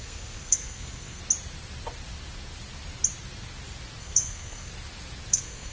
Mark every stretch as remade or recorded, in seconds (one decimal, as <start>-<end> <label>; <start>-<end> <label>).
0.0-1.2 remade; 1.2-4.0 recorded; 4.0-4.7 remade; 4.7-5.3 recorded; 5.3-5.7 remade